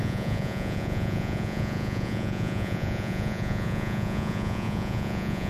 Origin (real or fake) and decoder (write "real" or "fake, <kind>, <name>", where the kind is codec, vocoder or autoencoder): fake, vocoder, Vocos